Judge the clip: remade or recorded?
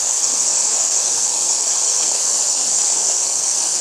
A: remade